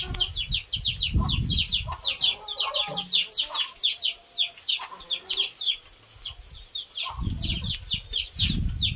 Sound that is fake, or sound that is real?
real